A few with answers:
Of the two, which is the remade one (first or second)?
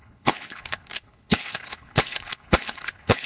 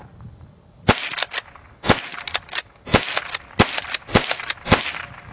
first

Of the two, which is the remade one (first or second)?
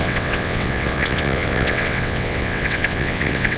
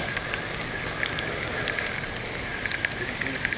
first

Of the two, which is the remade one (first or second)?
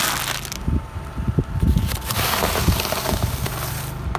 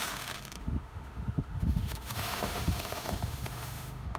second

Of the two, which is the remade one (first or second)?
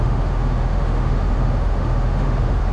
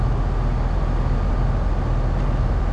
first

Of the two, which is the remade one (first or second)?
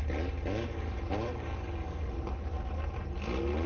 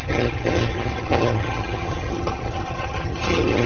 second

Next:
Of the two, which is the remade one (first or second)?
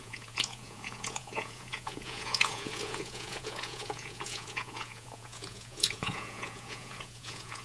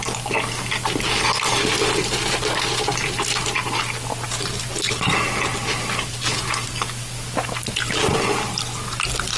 first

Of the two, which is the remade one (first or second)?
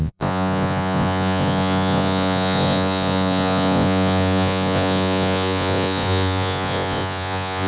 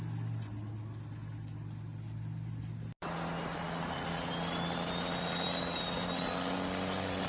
first